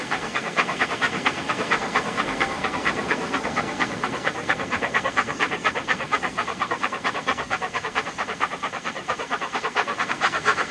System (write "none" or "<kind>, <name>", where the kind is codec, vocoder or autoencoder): codec, SNAC